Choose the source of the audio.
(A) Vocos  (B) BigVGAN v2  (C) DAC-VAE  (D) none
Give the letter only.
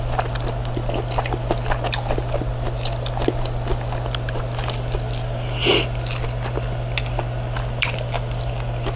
D